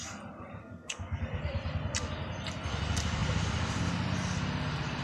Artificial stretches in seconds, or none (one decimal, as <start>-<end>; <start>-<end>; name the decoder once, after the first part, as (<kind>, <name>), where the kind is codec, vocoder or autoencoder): 0.6-1.2 (codec, SNAC)